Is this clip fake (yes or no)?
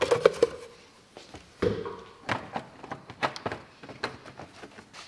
no